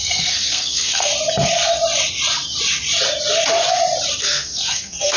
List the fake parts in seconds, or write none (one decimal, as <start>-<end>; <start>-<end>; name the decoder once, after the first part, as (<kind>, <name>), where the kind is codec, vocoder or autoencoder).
0.0-1.1 (codec, SNAC); 4.2-5.2